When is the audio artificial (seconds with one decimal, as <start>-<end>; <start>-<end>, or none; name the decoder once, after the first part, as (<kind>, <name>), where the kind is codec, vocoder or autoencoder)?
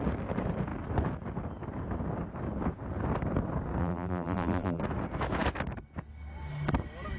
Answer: 3.8-4.8 (vocoder, BigVGAN v2)